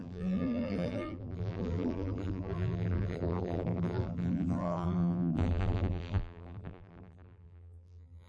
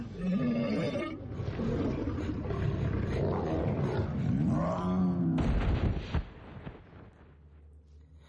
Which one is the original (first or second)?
second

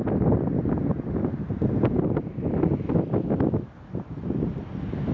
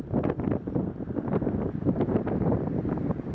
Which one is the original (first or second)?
first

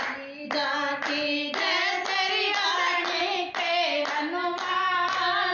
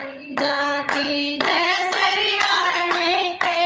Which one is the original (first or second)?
first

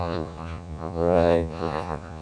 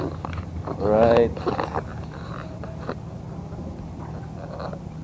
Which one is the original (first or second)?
second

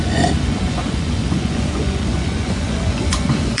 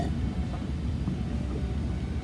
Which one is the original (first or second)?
second